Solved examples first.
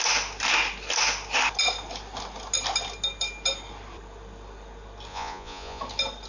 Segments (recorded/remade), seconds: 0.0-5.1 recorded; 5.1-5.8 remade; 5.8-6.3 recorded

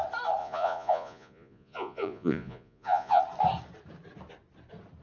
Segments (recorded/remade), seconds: 0.0-0.4 recorded; 0.4-3.2 remade; 3.2-5.0 recorded

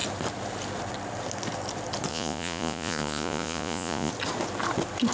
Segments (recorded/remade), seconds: 0.0-2.1 recorded; 2.1-4.1 remade; 4.1-5.1 recorded

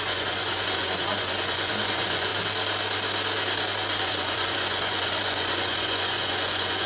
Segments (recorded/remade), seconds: 0.0-2.3 remade; 2.3-4.0 recorded; 4.0-6.9 remade

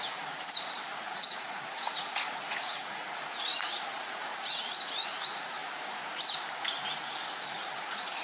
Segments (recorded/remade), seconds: 0.0-5.6 remade; 5.6-6.5 recorded; 6.5-8.2 remade